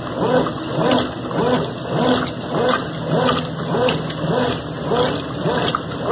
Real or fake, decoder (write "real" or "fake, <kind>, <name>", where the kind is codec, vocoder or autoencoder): real